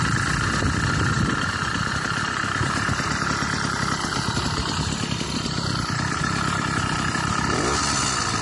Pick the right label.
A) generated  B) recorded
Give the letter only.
B